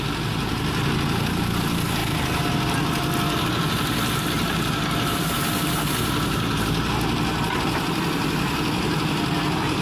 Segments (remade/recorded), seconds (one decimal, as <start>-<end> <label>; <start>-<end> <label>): 0.0-5.1 recorded; 5.1-7.6 remade; 7.6-9.8 recorded